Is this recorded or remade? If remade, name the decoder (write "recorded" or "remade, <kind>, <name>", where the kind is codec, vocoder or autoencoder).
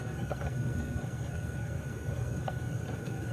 remade, codec, SNAC